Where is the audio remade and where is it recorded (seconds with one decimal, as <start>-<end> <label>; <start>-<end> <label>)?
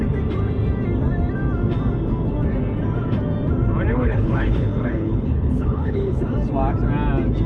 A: 0.0-3.9 recorded; 3.9-6.2 remade; 6.2-7.5 recorded